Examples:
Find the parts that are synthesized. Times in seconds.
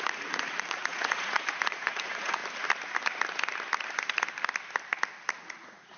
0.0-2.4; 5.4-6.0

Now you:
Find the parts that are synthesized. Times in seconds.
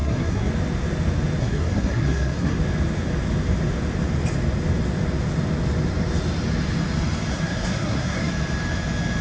0.0-0.5; 1.4-2.6; 7.3-8.3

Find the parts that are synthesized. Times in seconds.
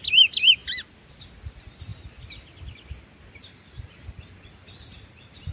none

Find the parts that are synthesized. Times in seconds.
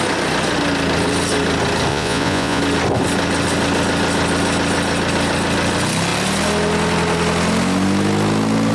1.9-2.6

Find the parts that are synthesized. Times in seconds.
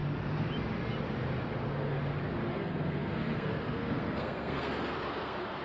2.5-5.6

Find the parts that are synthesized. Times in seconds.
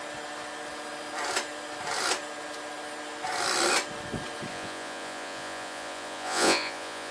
4.5-7.1